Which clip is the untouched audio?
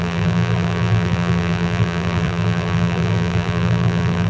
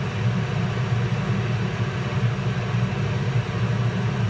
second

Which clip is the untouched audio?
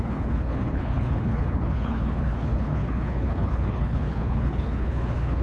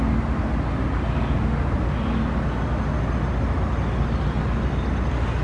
second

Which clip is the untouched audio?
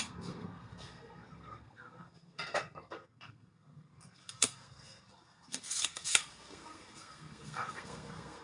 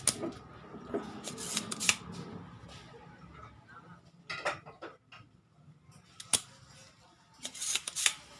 second